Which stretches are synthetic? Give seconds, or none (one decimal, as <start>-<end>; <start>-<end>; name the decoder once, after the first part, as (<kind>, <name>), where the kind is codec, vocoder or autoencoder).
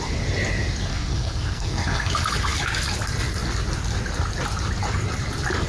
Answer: 0.9-2.1 (codec, SNAC)